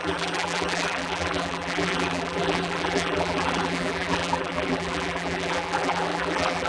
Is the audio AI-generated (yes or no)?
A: yes